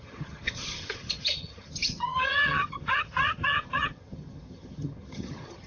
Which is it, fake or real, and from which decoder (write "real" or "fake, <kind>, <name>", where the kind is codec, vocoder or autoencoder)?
fake, vocoder, HiFi-GAN